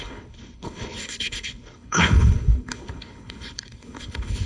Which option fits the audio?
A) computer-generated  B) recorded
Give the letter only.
A